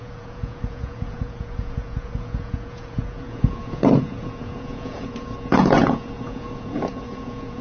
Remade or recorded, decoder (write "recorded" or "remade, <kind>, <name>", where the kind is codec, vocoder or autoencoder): remade, vocoder, Vocos